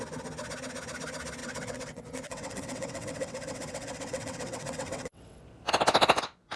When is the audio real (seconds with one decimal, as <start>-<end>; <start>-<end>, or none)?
0.0-1.4; 5.4-6.6